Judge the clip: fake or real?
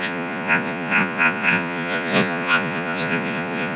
fake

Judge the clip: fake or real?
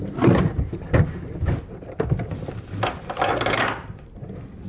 real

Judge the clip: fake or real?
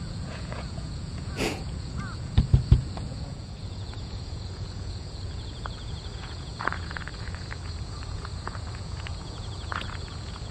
fake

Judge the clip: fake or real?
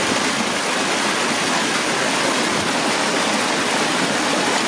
real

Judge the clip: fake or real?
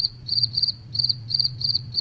fake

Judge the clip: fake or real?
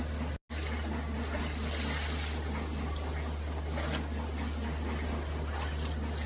real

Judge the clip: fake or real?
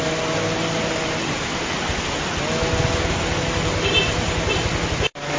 real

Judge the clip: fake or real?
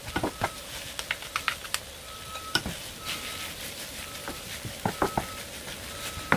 real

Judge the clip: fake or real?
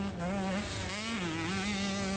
real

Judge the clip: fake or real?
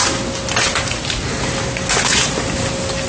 real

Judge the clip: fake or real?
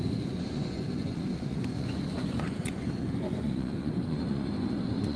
fake